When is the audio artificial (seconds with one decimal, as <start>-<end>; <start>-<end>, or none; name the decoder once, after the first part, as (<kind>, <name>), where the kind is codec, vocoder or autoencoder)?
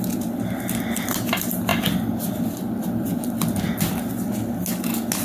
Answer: 1.7-3.6 (vocoder, BigVGAN v2)